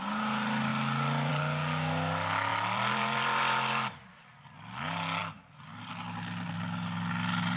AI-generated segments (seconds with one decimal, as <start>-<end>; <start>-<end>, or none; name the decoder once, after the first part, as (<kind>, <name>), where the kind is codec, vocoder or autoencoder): 2.5-4.0 (vocoder, BigVGAN v2)